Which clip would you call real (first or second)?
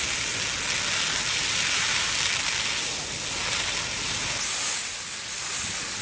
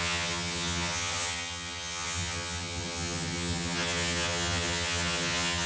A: first